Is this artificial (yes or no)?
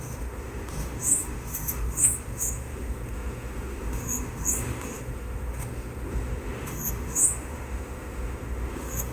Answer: yes